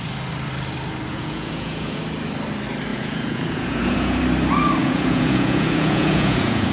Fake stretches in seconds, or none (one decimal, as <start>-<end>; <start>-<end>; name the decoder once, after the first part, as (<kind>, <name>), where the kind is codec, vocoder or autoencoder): 1.1-2.0 (vocoder, Vocos); 2.9-4.2; 4.8-6.7